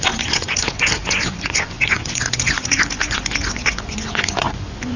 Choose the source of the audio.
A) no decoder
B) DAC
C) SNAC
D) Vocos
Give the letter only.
D